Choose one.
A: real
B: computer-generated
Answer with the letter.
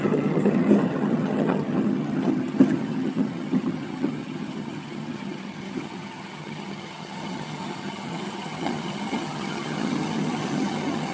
B